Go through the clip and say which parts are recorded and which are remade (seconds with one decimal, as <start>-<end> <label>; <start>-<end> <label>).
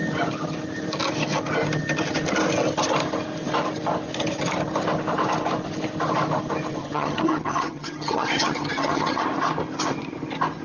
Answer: 0.0-6.8 recorded; 6.8-9.2 remade; 9.2-10.6 recorded